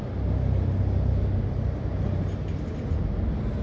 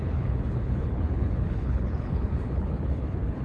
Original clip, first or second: first